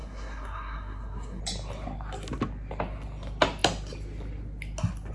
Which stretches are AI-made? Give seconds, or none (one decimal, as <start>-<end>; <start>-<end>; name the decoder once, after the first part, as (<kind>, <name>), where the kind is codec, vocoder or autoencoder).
0.0-1.4 (codec, SNAC)